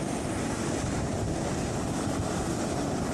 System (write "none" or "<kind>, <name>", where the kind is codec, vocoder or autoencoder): none